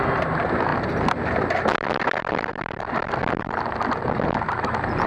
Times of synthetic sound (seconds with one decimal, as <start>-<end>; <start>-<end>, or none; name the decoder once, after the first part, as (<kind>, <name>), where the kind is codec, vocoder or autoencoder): none